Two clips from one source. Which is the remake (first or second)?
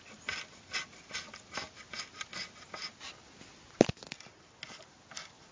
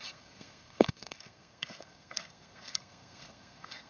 second